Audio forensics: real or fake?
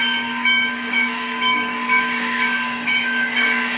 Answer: fake